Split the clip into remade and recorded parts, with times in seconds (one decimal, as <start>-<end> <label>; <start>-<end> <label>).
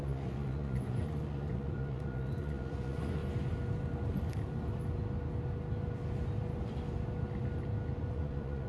0.0-3.2 remade; 3.2-8.0 recorded; 8.0-8.7 remade